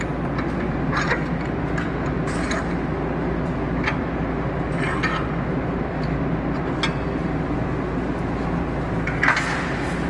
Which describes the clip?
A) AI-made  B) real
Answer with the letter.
B